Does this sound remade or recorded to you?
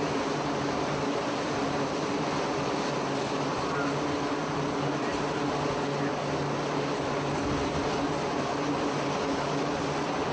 recorded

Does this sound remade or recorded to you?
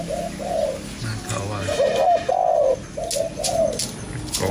recorded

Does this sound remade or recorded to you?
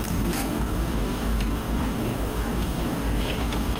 remade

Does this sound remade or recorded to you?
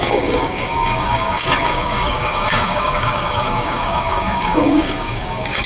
remade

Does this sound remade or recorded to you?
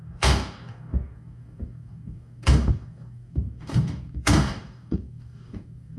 remade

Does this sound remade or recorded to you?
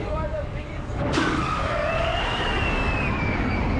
remade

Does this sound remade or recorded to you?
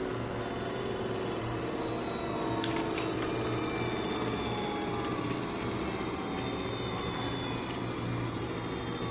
recorded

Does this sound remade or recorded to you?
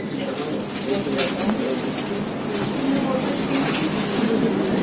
recorded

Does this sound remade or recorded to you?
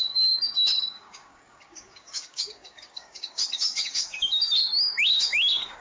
remade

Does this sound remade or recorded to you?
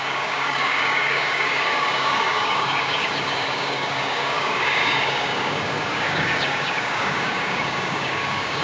remade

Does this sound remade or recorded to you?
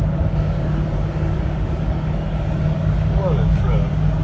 remade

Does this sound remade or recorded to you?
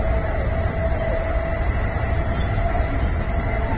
recorded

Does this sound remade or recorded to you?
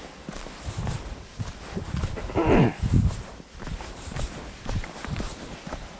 recorded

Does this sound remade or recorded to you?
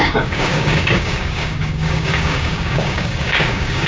remade